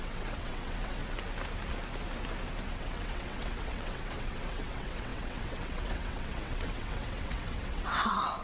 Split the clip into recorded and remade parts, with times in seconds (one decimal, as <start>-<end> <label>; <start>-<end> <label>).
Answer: 0.0-1.0 remade; 1.0-2.7 recorded; 2.7-8.4 remade